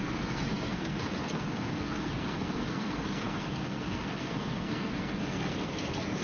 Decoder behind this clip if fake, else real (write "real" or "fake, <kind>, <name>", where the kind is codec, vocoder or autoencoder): fake, codec, SNAC